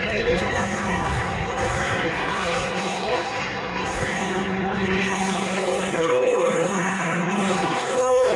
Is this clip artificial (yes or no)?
yes